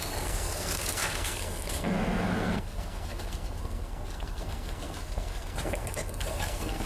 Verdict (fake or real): fake